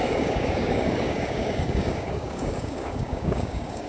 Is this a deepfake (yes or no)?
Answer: yes